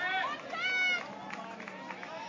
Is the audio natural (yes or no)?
yes